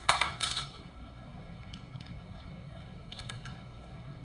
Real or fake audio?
fake